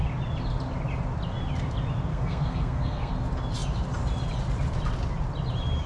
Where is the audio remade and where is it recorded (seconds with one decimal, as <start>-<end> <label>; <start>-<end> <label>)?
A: 0.0-2.1 recorded; 2.1-3.1 remade; 3.1-5.9 recorded